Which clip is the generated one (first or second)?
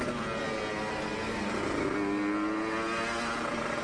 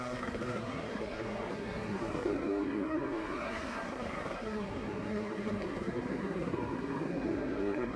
second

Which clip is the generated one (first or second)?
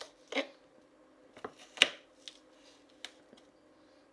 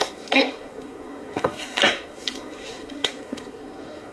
second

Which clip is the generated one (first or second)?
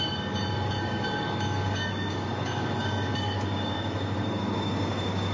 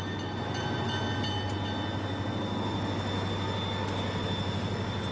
first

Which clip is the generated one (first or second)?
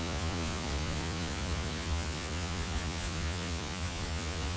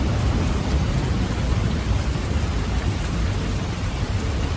first